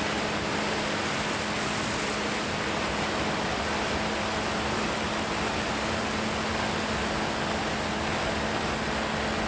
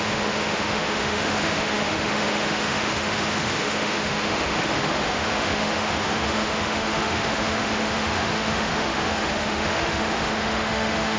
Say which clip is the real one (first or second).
first